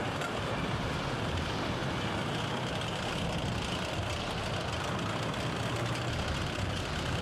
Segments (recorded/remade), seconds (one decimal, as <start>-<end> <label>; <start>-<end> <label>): 0.0-1.8 remade; 1.8-6.1 recorded; 6.1-7.2 remade